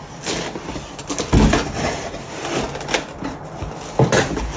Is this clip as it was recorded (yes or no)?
yes